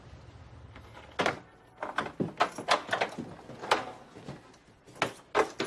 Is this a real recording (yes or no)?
yes